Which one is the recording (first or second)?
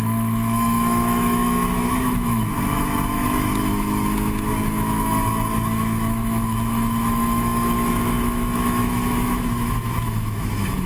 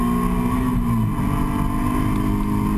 second